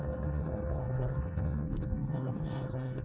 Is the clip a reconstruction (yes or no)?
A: yes